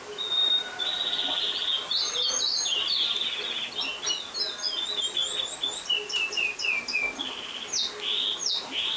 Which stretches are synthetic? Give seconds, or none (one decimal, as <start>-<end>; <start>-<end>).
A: none